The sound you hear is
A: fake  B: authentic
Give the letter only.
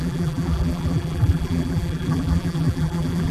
A